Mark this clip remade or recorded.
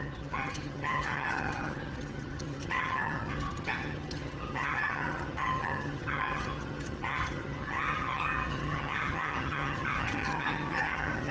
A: remade